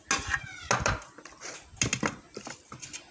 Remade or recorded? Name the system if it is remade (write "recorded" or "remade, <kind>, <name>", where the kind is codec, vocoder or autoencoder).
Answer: recorded